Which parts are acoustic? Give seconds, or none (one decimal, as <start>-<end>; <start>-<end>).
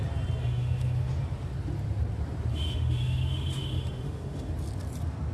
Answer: 0.0-0.4; 1.1-2.5; 4.5-5.3